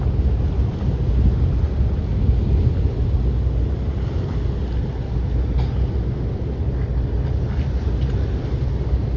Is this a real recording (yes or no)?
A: yes